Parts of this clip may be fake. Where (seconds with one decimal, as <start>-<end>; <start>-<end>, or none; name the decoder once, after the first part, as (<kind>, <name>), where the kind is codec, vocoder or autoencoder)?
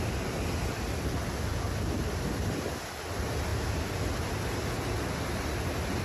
none